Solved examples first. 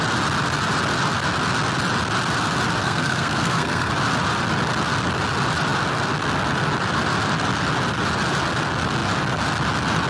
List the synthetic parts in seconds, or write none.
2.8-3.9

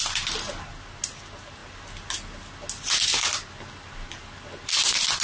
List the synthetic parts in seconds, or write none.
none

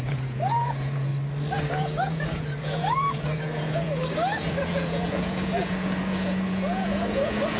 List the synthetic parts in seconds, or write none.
0.0-1.1; 1.7-4.0; 4.6-7.6

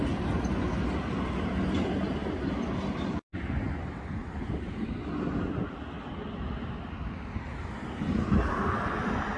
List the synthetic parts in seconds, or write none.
none